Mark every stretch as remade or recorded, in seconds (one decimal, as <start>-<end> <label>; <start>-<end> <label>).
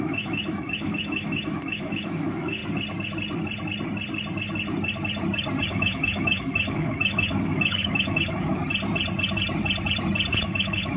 0.0-2.6 remade; 2.6-5.6 recorded; 5.6-8.6 remade; 8.6-10.4 recorded; 10.4-11.0 remade